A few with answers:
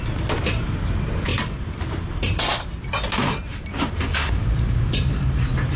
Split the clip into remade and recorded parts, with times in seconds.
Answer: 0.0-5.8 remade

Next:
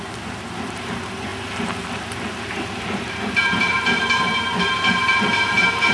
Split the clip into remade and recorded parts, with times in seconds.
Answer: 0.0-1.3 remade; 1.3-2.0 recorded; 2.0-5.9 remade

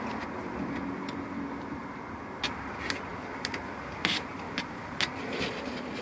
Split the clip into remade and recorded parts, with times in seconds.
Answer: 0.0-6.0 recorded